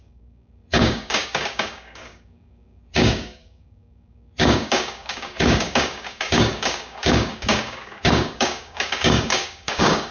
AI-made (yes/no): yes